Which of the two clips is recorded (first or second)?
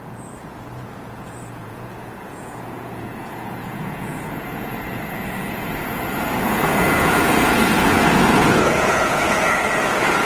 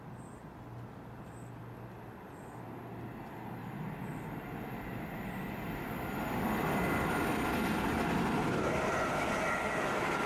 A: second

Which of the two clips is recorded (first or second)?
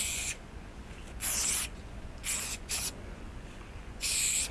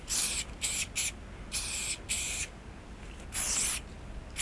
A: second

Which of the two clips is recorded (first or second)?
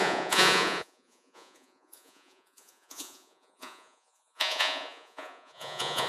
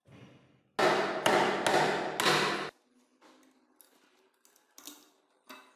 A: second